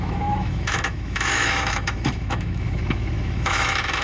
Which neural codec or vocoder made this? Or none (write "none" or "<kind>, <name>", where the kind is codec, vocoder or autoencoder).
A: autoencoder, DAC-VAE